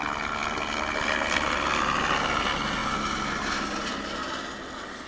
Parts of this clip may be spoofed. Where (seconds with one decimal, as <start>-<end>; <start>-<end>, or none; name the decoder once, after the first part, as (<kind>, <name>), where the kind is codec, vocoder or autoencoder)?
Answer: none